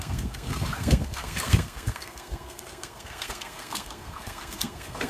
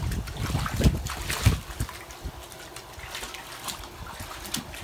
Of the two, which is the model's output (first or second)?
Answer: first